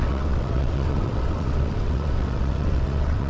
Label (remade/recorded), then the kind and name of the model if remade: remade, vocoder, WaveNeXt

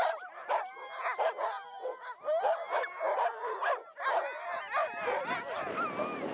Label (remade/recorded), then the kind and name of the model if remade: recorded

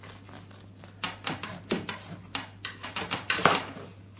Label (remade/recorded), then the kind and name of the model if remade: recorded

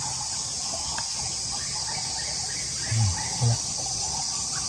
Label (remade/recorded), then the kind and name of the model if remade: recorded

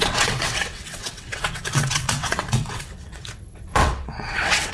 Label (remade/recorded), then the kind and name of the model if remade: remade, vocoder, WaveNeXt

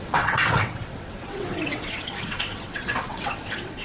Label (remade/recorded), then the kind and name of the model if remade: remade, vocoder, WaveNeXt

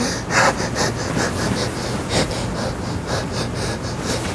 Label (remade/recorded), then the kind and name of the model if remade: recorded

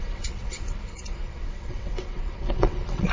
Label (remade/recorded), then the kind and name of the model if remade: remade, vocoder, WaveNeXt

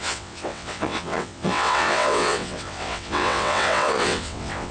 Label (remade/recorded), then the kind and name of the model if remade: remade, vocoder, WaveNeXt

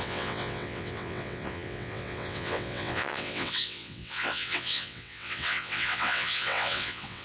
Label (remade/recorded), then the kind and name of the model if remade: remade, vocoder, WaveNeXt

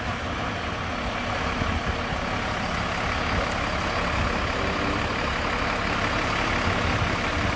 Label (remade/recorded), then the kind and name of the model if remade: recorded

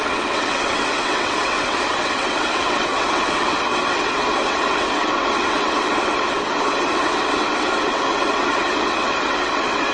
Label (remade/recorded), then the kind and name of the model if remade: remade, vocoder, WaveNeXt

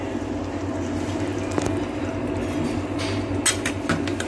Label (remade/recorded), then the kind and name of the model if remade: recorded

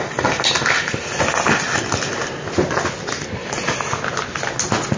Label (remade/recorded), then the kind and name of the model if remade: recorded